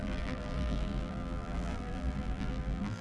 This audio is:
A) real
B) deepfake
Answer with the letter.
B